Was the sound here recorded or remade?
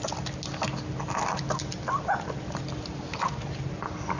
recorded